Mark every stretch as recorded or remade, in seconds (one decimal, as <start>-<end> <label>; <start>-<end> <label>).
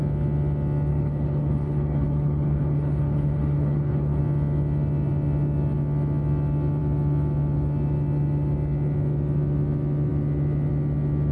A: 0.0-0.9 recorded; 0.9-4.2 remade; 4.2-11.3 recorded